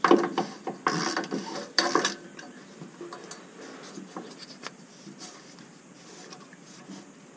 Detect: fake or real real